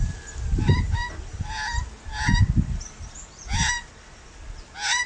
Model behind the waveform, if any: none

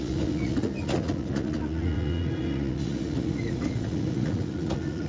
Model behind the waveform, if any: vocoder, Vocos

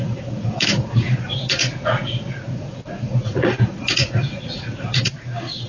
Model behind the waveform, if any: vocoder, Vocos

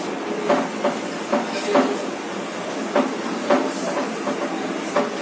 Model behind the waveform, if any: none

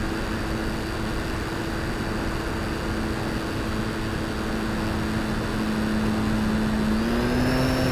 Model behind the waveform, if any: none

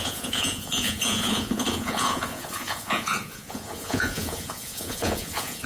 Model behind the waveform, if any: vocoder, Vocos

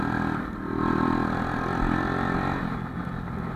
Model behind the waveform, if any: none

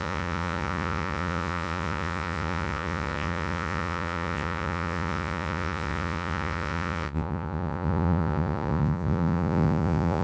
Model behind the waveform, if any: vocoder, Vocos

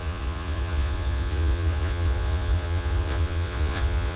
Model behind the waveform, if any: vocoder, Vocos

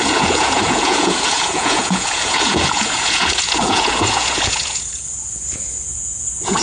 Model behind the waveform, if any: vocoder, Vocos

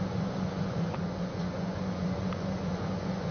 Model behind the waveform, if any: vocoder, Vocos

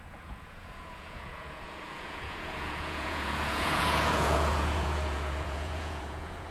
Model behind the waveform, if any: vocoder, Vocos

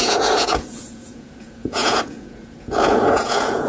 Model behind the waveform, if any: vocoder, Vocos